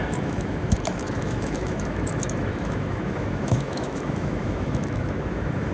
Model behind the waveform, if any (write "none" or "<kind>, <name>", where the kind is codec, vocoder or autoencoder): autoencoder, DAC-VAE